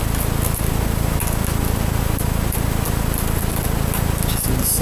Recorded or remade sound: recorded